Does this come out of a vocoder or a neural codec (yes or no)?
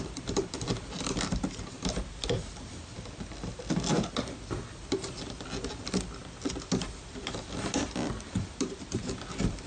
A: no